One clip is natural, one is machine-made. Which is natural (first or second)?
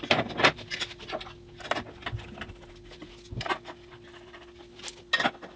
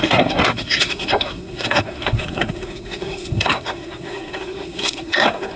first